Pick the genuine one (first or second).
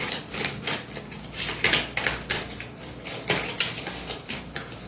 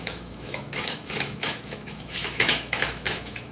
first